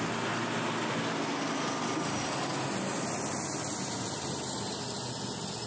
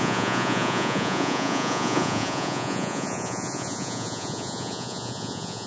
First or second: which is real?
first